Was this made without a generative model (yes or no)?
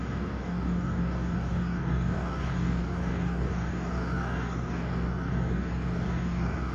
no